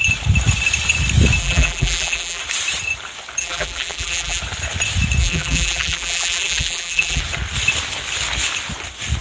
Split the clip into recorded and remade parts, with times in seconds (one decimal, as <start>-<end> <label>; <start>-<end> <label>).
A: 0.0-1.4 recorded; 1.4-2.4 remade; 2.4-3.4 recorded; 3.4-4.4 remade; 4.4-5.2 recorded; 5.2-7.2 remade; 7.2-9.2 recorded